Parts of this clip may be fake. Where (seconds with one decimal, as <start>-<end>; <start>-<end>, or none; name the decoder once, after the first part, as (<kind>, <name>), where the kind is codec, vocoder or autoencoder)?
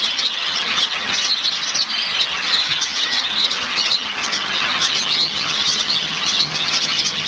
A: 0.0-1.3 (vocoder, HiFi-GAN); 2.2-7.3